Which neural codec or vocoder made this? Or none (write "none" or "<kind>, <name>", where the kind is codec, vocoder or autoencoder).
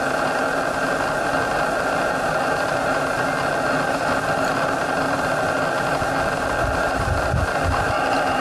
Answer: none